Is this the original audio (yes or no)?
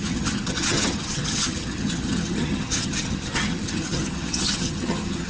no